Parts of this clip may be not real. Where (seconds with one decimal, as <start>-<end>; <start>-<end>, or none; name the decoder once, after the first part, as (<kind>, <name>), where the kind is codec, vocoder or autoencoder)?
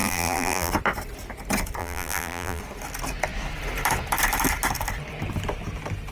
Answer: 0.0-0.7 (vocoder, BigVGAN v2); 1.8-2.6